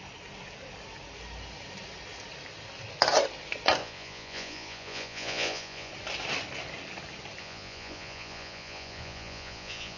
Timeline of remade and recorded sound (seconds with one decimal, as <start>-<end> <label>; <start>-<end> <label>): 0.0-3.8 recorded; 3.8-5.9 remade; 5.9-7.4 recorded; 7.4-10.0 remade